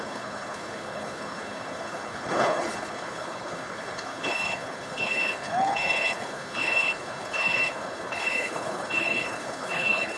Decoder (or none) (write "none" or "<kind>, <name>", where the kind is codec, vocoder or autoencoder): codec, HILCodec